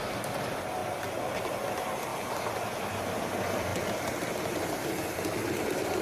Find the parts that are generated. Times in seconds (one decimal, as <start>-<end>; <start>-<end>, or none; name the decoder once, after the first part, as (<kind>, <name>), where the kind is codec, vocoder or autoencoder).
0.0-2.1 (vocoder, BigVGAN v2); 2.8-3.7; 4.8-6.0

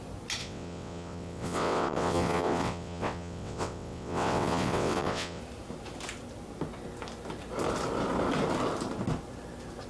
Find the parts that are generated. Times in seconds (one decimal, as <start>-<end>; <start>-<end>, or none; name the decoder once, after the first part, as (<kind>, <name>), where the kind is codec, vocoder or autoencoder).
0.4-5.4 (vocoder, WaveNeXt)

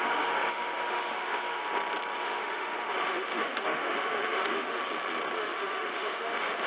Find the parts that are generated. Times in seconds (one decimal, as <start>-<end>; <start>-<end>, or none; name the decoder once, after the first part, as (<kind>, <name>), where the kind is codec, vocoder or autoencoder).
0.0-1.6 (autoencoder, DAC-VAE); 2.2-4.8; 5.4-6.7